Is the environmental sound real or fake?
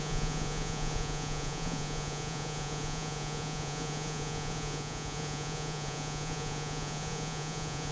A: fake